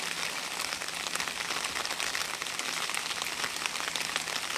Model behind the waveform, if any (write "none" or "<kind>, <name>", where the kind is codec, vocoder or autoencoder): none